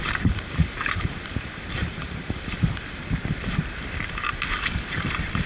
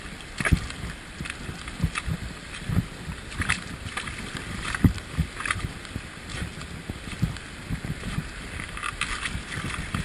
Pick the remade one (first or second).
first